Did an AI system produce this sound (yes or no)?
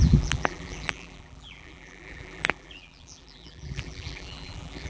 yes